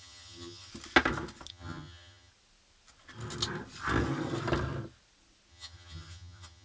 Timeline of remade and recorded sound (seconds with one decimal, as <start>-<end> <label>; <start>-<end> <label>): 0.0-0.7 remade; 0.7-1.5 recorded; 1.5-2.3 remade; 2.3-5.5 recorded; 5.5-6.6 remade